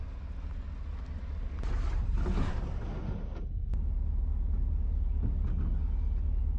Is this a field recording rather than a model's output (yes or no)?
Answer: yes